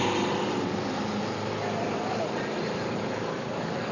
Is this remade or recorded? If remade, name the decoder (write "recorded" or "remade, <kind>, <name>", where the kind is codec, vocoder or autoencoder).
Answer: recorded